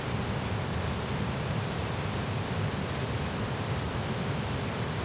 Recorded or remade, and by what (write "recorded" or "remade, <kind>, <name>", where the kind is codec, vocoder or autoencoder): recorded